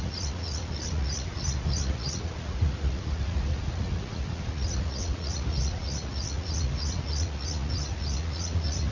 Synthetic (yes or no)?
yes